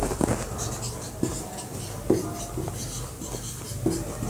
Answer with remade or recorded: recorded